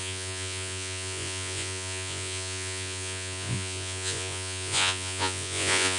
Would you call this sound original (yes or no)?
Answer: no